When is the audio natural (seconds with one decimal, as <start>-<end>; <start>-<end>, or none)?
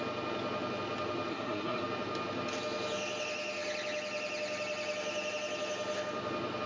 0.0-1.3; 1.8-6.7